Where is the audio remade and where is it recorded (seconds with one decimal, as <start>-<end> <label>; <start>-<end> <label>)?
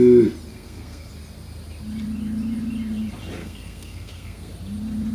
0.0-0.5 recorded; 0.5-1.1 remade; 1.1-3.4 recorded; 3.4-4.5 remade; 4.5-5.1 recorded